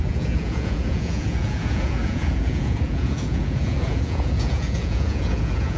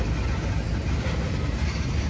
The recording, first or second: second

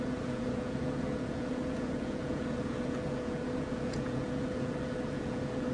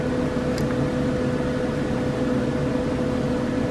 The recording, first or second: second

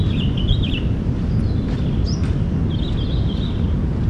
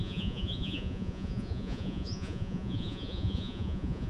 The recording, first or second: first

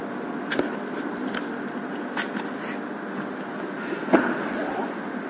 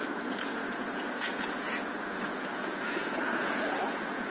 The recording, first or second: first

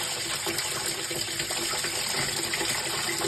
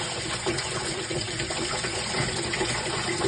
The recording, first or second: first